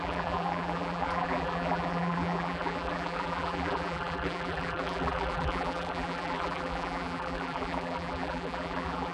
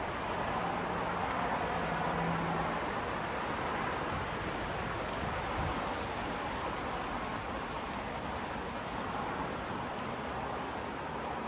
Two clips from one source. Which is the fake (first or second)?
first